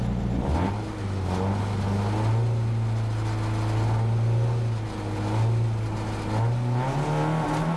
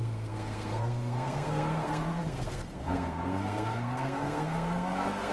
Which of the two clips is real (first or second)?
first